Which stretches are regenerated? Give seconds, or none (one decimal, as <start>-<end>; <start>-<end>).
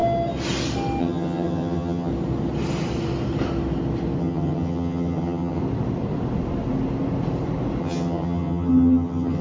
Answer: 1.0-2.1; 4.2-5.6; 7.8-9.4